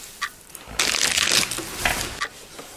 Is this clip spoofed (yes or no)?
no